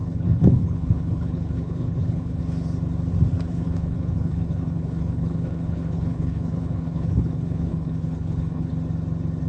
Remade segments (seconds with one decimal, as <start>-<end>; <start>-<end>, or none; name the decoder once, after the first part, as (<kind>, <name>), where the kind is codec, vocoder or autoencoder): 0.0-2.4 (codec, HILCodec); 3.5-8.7